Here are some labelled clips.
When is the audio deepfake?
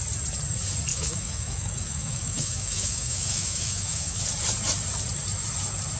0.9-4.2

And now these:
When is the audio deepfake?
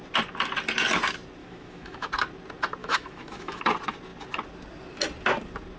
1.4-2.1; 2.8-3.6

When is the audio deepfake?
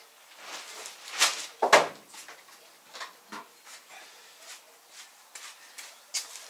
0.0-1.3; 5.2-6.5